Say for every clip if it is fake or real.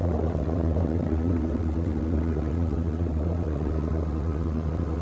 fake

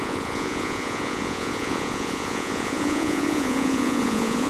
fake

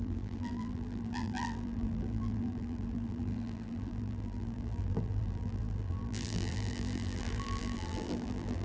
fake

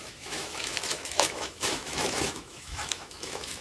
fake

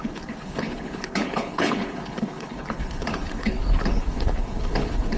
fake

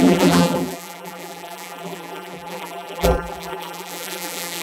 fake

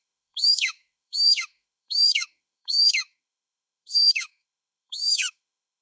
fake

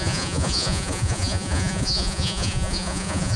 fake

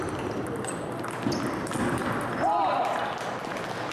real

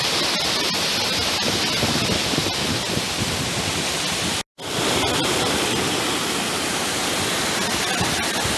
real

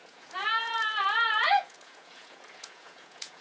fake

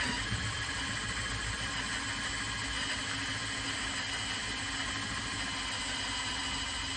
real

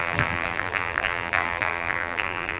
fake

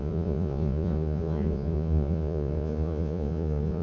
fake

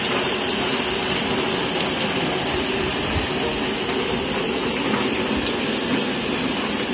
real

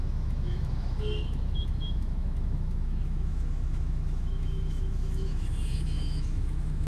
fake